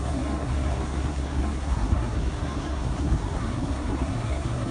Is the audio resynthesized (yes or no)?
yes